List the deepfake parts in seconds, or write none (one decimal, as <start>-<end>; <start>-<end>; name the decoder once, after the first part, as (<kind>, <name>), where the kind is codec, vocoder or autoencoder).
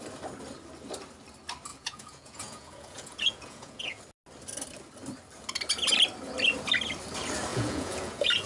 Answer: 1.7-4.0 (vocoder, Vocos); 7.5-8.5